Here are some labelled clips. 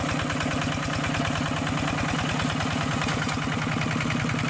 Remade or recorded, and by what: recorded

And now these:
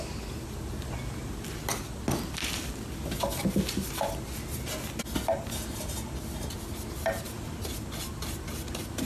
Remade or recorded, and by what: recorded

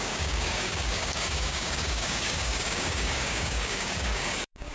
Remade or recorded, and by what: remade, codec, DAC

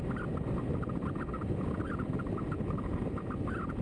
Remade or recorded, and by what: recorded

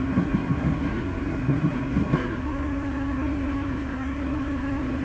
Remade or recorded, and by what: remade, codec, SNAC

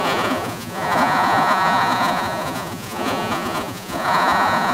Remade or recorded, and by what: remade, vocoder, Vocos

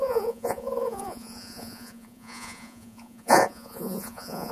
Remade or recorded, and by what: remade, vocoder, Vocos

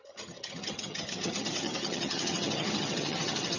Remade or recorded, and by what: remade, vocoder, HiFi-GAN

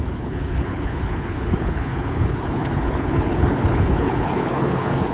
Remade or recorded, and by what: remade, codec, HILCodec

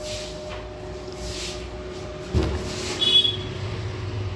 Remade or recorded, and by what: recorded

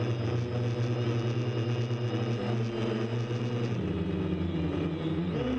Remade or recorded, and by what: recorded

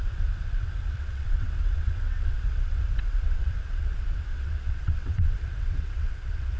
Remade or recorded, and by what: remade, vocoder, WaveNeXt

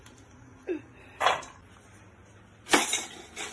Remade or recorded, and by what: recorded